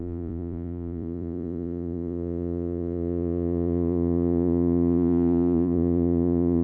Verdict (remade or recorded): remade